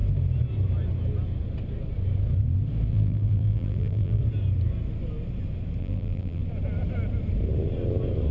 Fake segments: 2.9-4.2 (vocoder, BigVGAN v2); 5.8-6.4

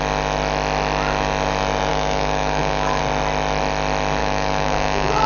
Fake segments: 1.9-3.0 (autoencoder, DAC-VAE); 4.2-5.3

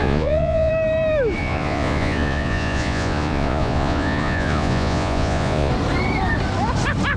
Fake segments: 0.0-0.7 (vocoder, Vocos); 1.4-5.7

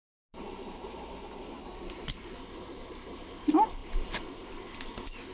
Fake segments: 1.6-2.3 (vocoder, BigVGAN v2)

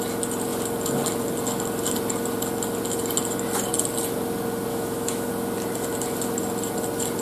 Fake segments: 4.7-5.3 (autoencoder, DAC-VAE)

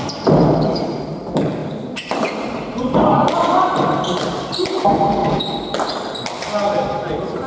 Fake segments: 1.6-4.8 (vocoder, BigVGAN v2)